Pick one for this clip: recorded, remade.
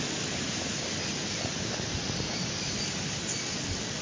recorded